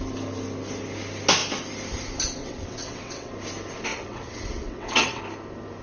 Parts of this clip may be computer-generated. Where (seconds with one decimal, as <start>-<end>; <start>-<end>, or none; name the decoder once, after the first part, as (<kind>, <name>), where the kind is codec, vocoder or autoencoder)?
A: 2.4-3.3 (vocoder, WaveNeXt); 3.9-5.2